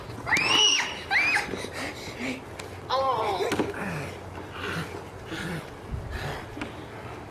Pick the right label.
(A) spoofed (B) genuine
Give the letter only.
B